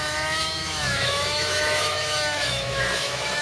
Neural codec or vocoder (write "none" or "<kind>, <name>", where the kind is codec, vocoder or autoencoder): autoencoder, DAC-VAE